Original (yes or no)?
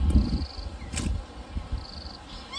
yes